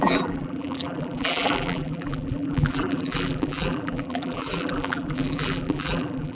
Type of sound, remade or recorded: remade